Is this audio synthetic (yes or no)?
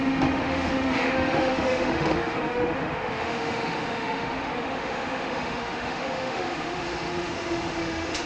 yes